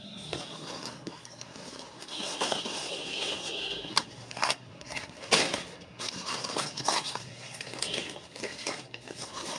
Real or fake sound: fake